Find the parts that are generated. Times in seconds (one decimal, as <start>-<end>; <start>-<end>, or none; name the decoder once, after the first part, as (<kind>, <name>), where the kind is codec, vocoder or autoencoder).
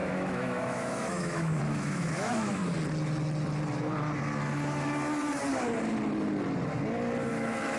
0.0-2.6 (autoencoder, DAC-VAE); 7.3-7.8